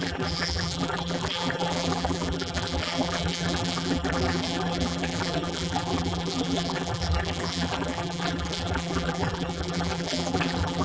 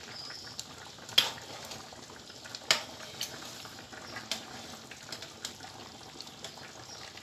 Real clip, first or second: second